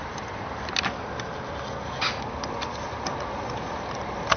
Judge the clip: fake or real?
real